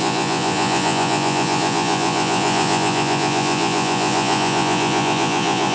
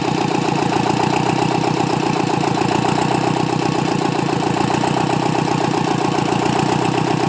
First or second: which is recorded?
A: second